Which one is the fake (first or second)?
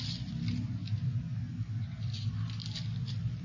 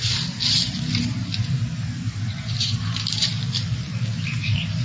second